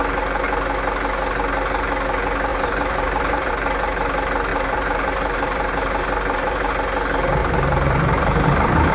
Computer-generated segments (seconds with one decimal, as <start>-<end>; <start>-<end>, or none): 2.5-3.5; 4.5-6.7; 7.4-8.9